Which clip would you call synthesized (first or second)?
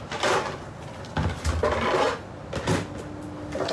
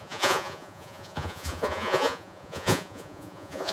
second